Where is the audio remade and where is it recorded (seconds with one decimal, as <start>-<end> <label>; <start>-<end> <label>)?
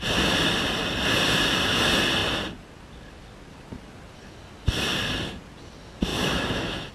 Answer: 0.0-6.1 recorded; 6.1-6.9 remade